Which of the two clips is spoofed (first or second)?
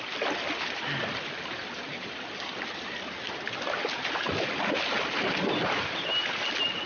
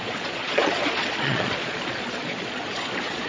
second